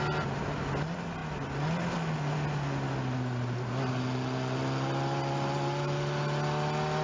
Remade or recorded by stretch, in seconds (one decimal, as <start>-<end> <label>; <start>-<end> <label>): 0.0-7.0 recorded